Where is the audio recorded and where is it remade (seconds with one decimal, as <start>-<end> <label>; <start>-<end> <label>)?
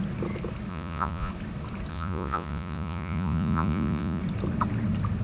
0.0-0.7 recorded; 0.7-1.3 remade; 1.3-1.9 recorded; 1.9-4.2 remade; 4.2-5.2 recorded